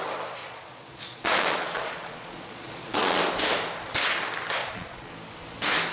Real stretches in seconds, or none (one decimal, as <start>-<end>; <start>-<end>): 0.0-0.4; 3.2-4.6; 5.1-5.9